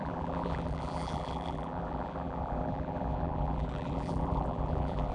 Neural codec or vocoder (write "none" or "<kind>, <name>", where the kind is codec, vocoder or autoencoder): vocoder, BigVGAN v2